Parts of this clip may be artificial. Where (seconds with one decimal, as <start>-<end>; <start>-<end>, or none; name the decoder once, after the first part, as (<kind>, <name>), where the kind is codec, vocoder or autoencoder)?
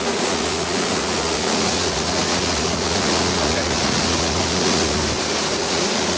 0.0-5.0 (vocoder, Vocos); 5.6-6.2